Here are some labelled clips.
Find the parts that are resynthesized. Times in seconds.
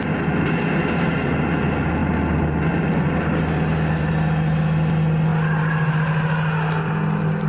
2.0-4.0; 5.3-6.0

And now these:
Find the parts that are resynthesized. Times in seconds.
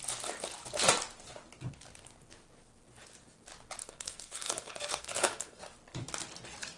3.8-5.6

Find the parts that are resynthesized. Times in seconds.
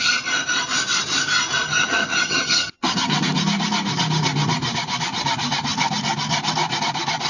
1.7-3.4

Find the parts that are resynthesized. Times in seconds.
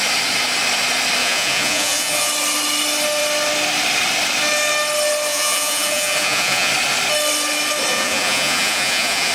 1.2-2.3; 5.3-6.7; 7.9-9.3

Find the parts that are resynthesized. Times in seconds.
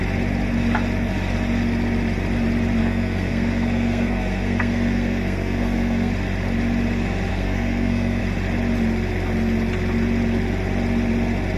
2.8-6.1; 7.3-8.2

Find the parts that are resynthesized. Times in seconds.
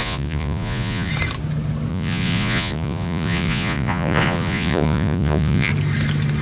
0.0-1.1; 1.9-5.7